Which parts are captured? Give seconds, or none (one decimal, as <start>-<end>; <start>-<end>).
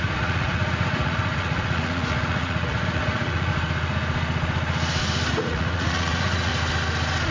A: 3.5-5.3; 6.5-7.3